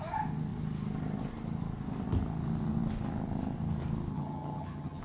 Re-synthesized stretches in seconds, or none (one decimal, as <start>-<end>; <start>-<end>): 4.1-5.0